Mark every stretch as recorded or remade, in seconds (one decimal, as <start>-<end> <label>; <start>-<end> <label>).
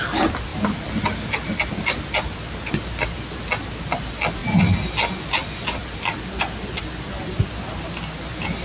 0.0-8.6 recorded